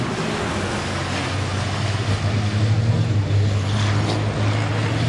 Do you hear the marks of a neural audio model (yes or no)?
no